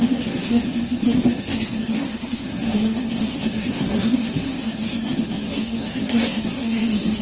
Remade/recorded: remade